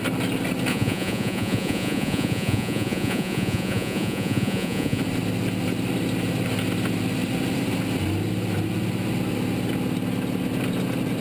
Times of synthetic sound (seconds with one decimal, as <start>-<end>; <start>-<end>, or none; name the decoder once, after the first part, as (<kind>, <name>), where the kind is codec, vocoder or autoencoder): 0.7-5.0 (vocoder, Vocos)